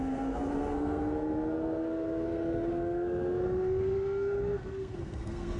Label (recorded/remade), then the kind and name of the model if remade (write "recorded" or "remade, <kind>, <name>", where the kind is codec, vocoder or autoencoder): remade, codec, SNAC